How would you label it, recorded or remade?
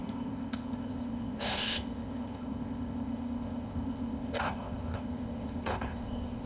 remade